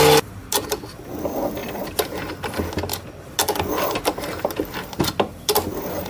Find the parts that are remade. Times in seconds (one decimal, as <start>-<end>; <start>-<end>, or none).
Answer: 1.6-2.3